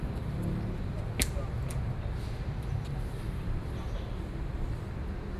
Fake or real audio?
real